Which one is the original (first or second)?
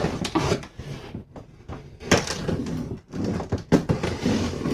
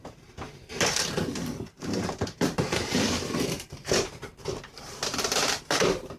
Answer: first